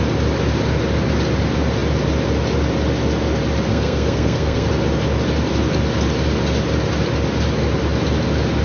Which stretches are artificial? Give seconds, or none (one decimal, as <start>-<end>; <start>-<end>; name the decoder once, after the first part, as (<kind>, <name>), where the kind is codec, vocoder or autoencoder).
3.7-4.7 (codec, SNAC)